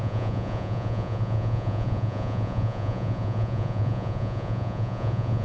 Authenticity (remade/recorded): remade